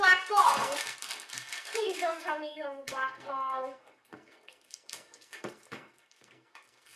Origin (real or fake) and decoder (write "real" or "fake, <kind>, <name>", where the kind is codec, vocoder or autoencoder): fake, codec, SNAC